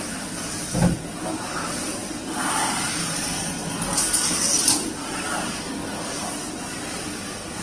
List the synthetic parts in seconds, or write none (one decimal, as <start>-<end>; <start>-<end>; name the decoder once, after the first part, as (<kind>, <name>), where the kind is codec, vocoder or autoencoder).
none